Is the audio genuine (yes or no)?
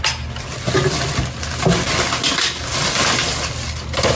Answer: yes